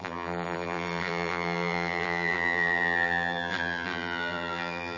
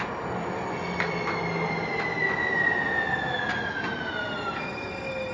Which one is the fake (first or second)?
first